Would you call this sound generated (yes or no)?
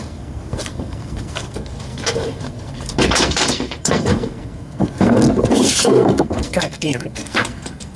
yes